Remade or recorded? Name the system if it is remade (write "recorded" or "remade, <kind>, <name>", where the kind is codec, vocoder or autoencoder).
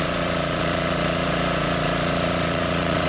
remade, vocoder, Vocos